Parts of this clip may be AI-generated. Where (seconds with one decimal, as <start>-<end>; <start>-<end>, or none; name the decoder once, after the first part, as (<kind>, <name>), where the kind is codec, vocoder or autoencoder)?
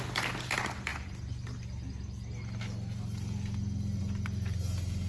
none